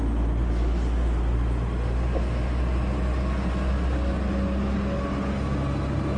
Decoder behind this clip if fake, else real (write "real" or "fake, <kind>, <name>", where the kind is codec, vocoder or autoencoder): real